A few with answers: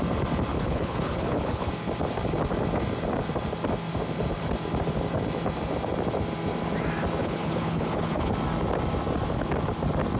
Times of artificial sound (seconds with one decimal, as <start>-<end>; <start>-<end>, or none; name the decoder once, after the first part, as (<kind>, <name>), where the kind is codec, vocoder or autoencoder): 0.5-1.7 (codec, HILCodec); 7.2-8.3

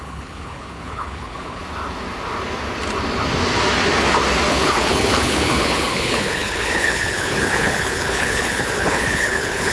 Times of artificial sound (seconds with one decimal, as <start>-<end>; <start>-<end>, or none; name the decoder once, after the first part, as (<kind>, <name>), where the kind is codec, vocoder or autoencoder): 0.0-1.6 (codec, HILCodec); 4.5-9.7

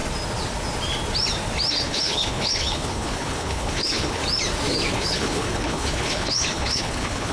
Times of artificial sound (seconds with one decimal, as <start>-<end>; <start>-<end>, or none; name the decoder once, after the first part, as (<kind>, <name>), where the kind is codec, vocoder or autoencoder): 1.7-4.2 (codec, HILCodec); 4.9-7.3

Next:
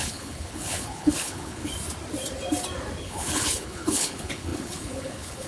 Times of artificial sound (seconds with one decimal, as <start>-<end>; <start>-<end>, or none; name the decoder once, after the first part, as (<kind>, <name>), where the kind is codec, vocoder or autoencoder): 0.0-1.7 (codec, HILCodec); 3.0-5.5